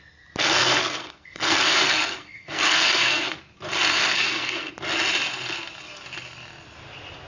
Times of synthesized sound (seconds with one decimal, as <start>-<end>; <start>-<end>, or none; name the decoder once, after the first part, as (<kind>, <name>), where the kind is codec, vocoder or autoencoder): 0.4-3.4 (codec, SNAC); 3.9-4.7